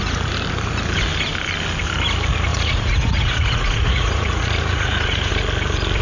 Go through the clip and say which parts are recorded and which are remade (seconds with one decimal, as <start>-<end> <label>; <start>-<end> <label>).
0.0-2.5 recorded; 2.5-5.3 remade; 5.3-6.0 recorded

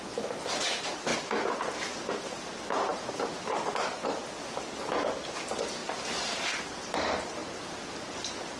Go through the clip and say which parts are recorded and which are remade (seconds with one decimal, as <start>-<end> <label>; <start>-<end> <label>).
0.0-8.6 recorded

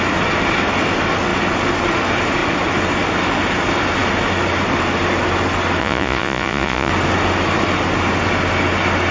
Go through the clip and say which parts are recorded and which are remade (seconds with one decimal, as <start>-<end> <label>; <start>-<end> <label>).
0.0-5.8 recorded; 5.8-6.9 remade; 6.9-9.1 recorded

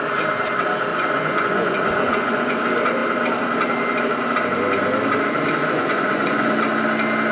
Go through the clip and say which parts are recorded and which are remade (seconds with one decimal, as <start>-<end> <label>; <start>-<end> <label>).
0.0-0.9 recorded; 0.9-2.6 remade; 2.6-5.6 recorded; 5.6-6.5 remade; 6.5-7.3 recorded

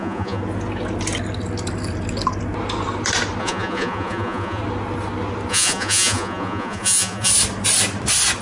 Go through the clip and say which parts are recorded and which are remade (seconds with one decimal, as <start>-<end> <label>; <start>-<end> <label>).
0.0-0.4 remade; 0.4-3.4 recorded; 3.4-4.6 remade; 4.6-5.5 recorded; 5.5-7.3 remade; 7.3-8.4 recorded

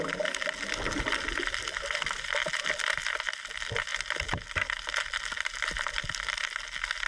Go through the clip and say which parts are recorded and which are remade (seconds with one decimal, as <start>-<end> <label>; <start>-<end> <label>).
0.0-7.1 recorded